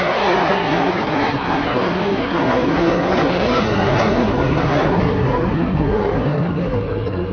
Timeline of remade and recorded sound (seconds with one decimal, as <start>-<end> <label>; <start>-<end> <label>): 0.0-7.3 remade